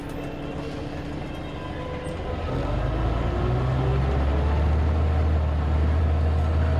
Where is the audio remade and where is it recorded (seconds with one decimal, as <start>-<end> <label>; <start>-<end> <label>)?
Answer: 0.0-6.8 recorded